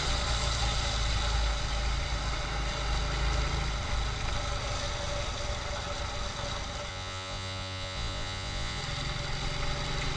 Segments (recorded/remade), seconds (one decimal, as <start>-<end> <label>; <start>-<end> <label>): 0.0-6.9 recorded; 6.9-8.8 remade; 8.8-10.2 recorded